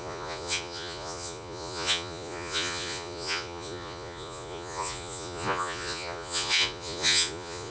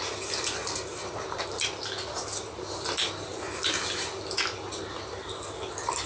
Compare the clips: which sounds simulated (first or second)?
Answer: first